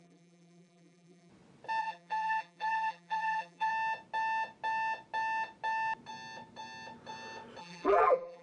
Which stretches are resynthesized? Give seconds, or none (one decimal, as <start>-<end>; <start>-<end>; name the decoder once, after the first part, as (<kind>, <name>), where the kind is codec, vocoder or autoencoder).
0.0-1.3 (vocoder, BigVGAN v2); 1.8-3.7; 7.6-8.4